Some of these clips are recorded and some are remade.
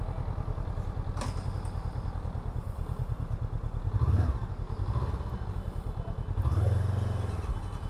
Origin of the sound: recorded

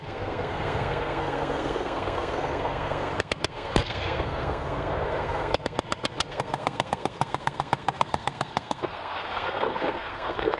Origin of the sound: remade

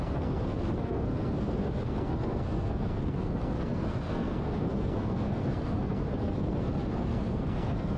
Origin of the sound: remade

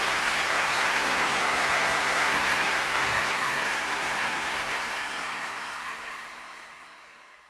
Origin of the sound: remade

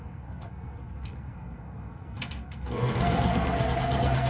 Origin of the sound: remade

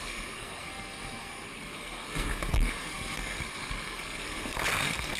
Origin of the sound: remade